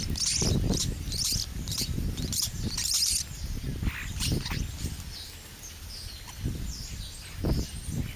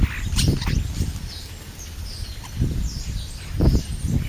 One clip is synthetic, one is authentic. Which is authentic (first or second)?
first